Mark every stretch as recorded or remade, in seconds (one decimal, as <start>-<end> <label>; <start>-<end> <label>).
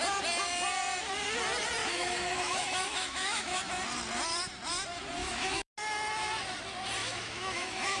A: 0.0-1.8 recorded; 1.8-3.6 remade; 3.6-5.2 recorded; 5.2-5.7 remade; 5.7-7.0 recorded; 7.0-8.0 remade